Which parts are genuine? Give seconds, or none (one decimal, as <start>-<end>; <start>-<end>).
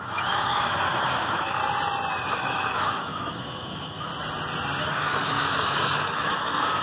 1.6-2.3; 4.1-4.8